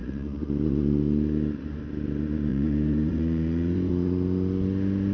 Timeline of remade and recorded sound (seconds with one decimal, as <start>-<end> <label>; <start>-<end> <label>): 0.0-0.5 remade; 0.5-2.5 recorded; 2.5-3.9 remade; 3.9-5.1 recorded